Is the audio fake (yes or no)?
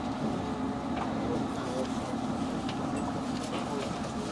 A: no